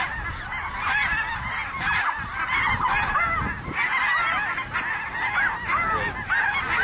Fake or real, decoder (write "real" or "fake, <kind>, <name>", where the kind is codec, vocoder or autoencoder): real